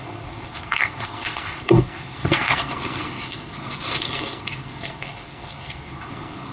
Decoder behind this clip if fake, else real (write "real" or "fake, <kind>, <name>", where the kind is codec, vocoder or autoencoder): fake, codec, SNAC